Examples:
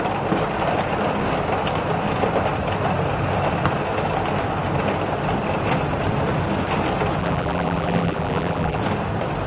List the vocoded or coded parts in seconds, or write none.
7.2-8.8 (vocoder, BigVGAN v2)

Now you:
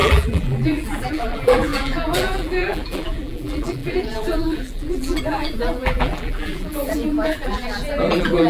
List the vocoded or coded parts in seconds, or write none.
0.0-8.5 (vocoder, BigVGAN v2)

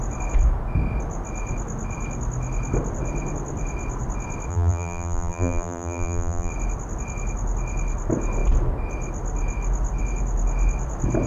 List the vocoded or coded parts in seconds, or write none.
4.5-6.5 (vocoder, BigVGAN v2)

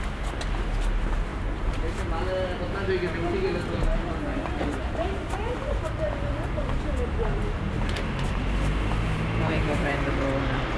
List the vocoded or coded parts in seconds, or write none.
1.3-2.2 (vocoder, BigVGAN v2); 4.4-6.6